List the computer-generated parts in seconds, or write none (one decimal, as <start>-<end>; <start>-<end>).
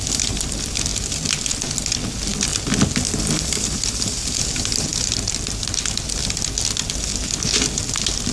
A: none